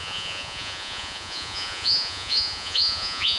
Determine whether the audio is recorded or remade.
remade